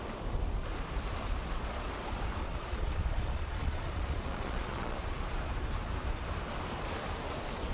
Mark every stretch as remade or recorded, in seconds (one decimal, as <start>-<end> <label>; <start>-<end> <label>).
0.0-2.4 recorded; 2.4-5.2 remade; 5.2-7.7 recorded

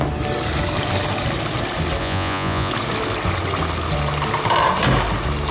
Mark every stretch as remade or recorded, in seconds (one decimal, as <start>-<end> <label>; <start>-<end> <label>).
0.0-2.0 recorded; 2.0-2.7 remade; 2.7-5.5 recorded

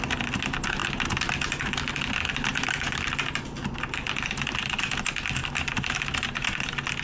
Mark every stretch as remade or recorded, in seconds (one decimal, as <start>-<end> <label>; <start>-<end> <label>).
0.0-7.0 recorded

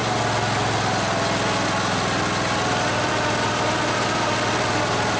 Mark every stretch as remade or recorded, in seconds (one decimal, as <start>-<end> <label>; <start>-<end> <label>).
0.0-5.2 recorded

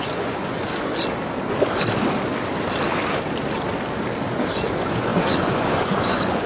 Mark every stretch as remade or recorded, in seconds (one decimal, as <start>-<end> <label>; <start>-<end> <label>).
0.0-0.9 remade; 0.9-4.5 recorded; 4.5-6.5 remade

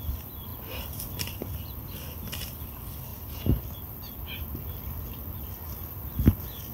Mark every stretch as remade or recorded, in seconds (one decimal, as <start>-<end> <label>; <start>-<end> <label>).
0.0-3.1 recorded; 3.1-3.6 remade; 3.6-6.7 recorded

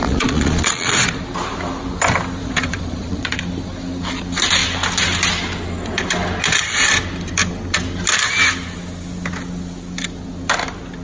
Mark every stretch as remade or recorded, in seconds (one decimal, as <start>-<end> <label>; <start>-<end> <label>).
0.0-1.2 remade; 1.2-2.4 recorded; 2.4-3.4 remade; 3.4-11.0 recorded